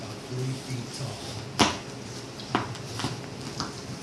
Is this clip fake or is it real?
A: real